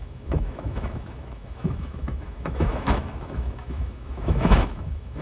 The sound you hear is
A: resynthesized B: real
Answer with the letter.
A